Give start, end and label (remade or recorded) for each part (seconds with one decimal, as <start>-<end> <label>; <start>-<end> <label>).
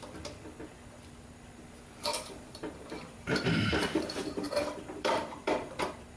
0.0-2.1 recorded; 2.1-5.8 remade; 5.8-6.2 recorded